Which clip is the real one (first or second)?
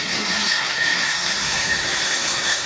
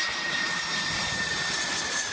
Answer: second